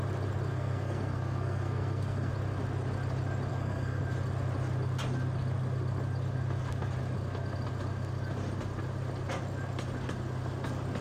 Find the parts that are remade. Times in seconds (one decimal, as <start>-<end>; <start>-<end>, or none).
0.5-2.3; 3.5-4.0